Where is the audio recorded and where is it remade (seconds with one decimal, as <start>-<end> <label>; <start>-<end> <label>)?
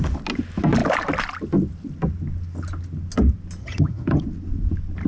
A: 0.0-3.6 recorded; 3.6-4.2 remade; 4.2-5.1 recorded